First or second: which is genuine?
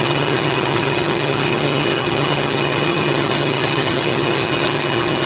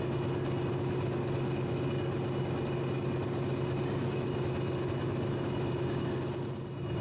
second